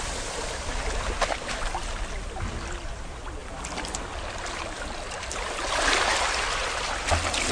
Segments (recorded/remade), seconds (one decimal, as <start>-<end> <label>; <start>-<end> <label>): 0.0-7.5 recorded